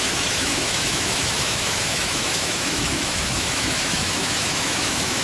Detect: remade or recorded remade